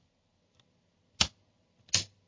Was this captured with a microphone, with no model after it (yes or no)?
yes